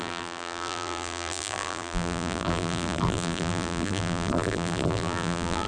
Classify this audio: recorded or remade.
remade